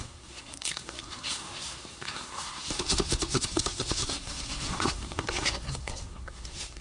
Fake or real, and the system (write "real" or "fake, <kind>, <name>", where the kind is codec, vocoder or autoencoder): fake, codec, SNAC